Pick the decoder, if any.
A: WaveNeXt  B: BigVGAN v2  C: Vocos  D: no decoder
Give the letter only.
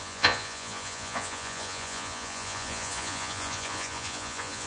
C